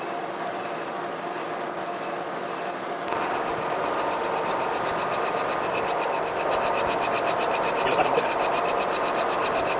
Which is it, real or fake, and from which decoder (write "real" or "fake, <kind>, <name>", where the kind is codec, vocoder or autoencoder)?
real